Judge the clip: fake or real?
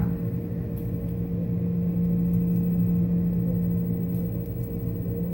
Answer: real